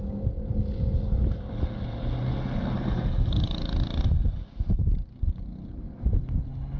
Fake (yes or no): no